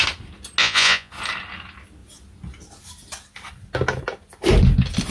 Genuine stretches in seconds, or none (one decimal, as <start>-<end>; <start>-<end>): 0.0-0.6; 1.1-5.1